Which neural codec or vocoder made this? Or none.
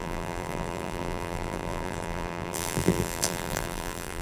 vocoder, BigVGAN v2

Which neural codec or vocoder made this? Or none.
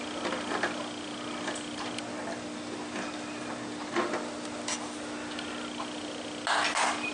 none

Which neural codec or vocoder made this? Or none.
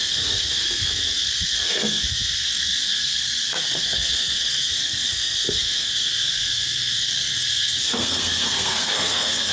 codec, SNAC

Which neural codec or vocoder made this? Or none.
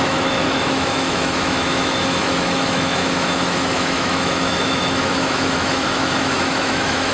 autoencoder, DAC-VAE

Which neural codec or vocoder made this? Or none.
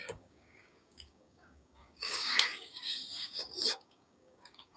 codec, DAC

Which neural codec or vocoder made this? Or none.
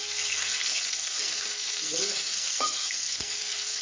codec, SNAC